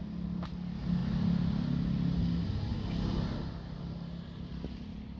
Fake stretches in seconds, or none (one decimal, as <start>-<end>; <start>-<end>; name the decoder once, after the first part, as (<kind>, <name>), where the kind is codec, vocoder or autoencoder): none

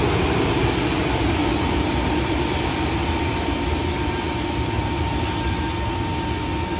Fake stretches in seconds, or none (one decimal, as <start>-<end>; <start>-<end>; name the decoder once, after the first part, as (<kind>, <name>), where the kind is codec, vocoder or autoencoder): none

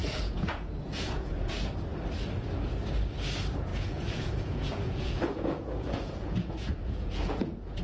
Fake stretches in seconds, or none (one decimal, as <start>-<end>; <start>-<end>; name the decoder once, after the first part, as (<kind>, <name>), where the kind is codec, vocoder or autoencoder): 0.0-1.5 (vocoder, Vocos); 3.7-7.8

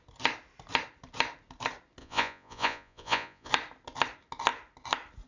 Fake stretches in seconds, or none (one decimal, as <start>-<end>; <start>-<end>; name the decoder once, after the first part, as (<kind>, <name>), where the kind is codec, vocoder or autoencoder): 2.0-3.5 (vocoder, Vocos)

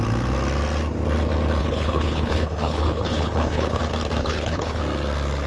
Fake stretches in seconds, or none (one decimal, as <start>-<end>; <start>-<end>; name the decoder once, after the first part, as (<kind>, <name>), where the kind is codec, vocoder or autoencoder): 1.6-3.8 (codec, HILCodec); 4.2-4.8

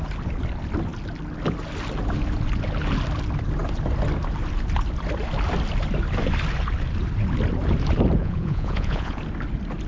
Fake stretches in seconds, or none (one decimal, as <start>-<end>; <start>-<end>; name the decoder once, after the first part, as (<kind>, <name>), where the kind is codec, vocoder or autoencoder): 8.2-9.2 (vocoder, Vocos)

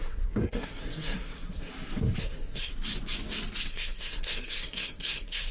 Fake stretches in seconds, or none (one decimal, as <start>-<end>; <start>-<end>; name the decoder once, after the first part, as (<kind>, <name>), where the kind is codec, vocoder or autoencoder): 0.0-1.7 (codec, SNAC); 2.2-2.7; 3.7-5.5

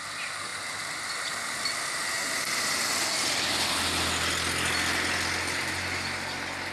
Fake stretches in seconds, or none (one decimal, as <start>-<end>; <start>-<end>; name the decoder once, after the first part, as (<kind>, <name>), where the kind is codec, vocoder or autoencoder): none